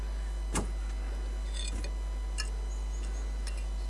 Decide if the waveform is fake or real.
real